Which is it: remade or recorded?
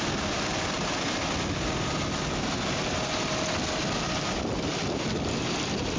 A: recorded